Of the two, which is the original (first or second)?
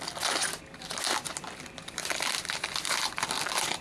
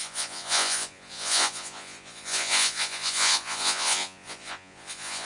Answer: first